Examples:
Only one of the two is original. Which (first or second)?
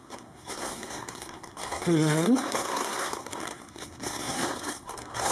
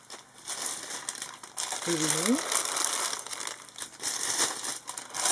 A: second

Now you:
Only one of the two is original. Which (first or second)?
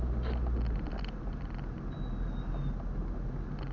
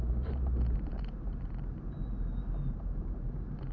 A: first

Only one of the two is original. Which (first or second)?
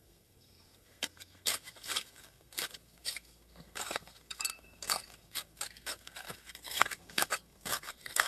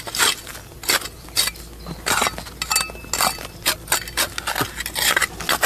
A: second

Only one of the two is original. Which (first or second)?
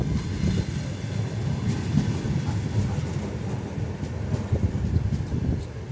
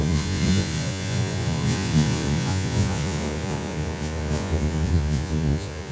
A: first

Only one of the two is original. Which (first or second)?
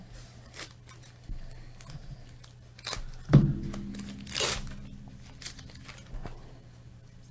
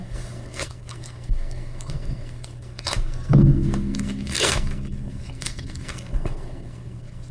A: first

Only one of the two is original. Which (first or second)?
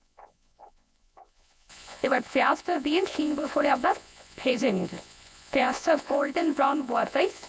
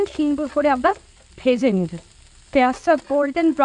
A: second